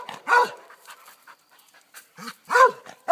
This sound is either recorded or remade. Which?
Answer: remade